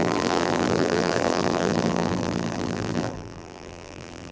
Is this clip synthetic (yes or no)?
yes